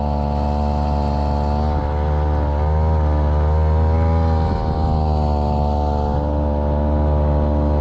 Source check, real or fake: real